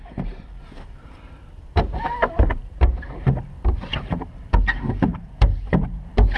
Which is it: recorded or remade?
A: remade